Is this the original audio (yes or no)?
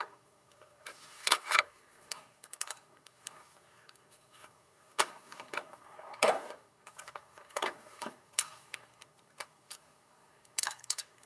no